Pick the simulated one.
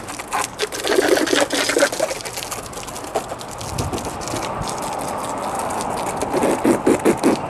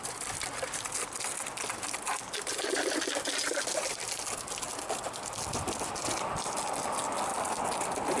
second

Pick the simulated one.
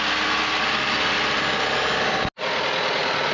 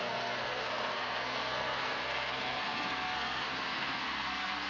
second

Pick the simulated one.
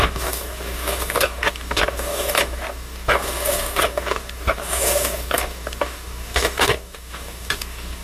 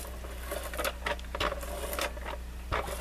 first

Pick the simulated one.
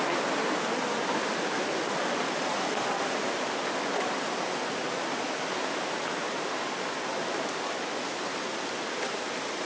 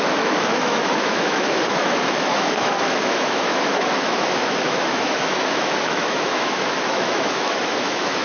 second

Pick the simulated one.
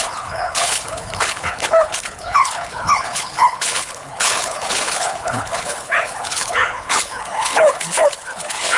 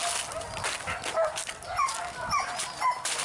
first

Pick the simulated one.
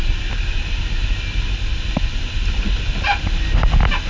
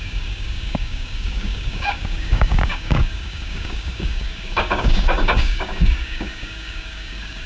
second